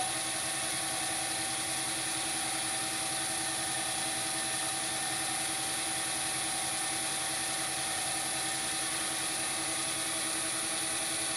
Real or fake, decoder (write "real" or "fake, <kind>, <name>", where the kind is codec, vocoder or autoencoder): real